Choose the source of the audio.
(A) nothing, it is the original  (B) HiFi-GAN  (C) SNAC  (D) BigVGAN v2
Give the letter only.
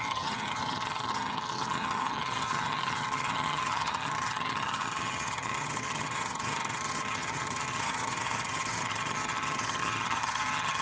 B